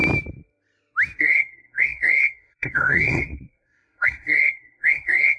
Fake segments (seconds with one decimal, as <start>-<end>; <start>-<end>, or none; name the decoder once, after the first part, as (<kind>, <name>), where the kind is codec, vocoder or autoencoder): 1.2-5.4 (codec, SNAC)